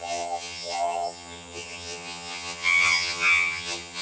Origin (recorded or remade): remade